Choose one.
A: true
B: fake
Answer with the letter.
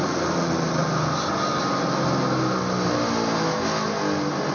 A